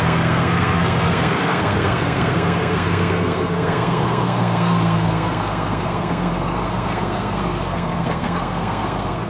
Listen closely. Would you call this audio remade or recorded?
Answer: remade